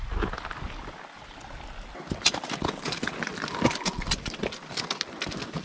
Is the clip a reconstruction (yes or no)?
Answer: no